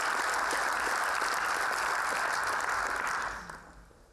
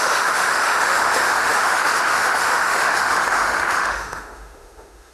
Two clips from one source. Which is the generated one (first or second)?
second